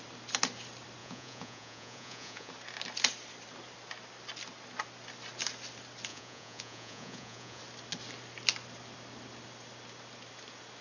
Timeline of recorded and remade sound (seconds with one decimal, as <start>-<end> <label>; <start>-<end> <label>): 0.0-1.0 recorded; 1.0-2.5 remade; 2.5-6.1 recorded; 6.1-7.6 remade; 7.6-10.8 recorded